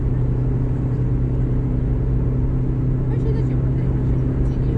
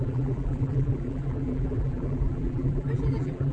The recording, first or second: first